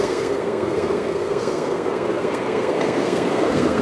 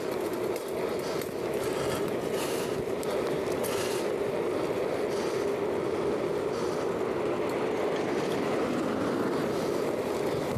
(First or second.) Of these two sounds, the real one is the second